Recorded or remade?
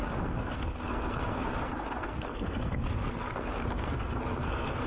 remade